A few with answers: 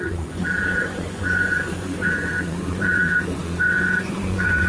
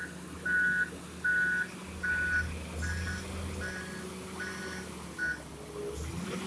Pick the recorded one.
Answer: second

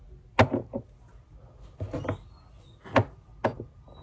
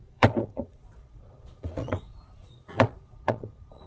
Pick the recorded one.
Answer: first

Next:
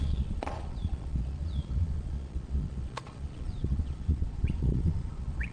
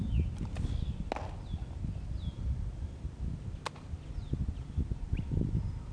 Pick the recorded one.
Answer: second